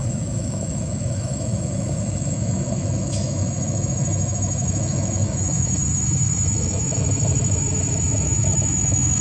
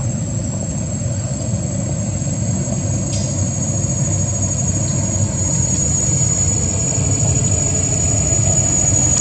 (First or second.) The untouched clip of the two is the second